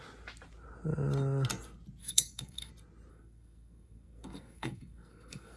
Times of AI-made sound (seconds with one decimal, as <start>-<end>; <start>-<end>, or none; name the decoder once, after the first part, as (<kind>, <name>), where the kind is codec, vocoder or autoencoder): 2.0-2.7 (codec, SNAC); 3.1-5.6